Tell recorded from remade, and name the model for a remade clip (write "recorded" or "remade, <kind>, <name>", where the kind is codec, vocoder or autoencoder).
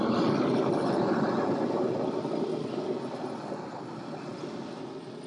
recorded